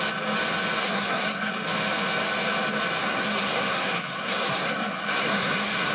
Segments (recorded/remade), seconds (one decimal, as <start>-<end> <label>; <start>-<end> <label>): 0.0-0.8 recorded; 0.8-1.5 remade; 1.5-3.0 recorded; 3.0-5.9 remade